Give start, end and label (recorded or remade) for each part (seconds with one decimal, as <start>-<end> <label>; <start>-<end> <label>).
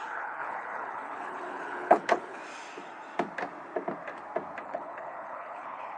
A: 0.0-2.4 remade; 2.4-4.6 recorded; 4.6-6.0 remade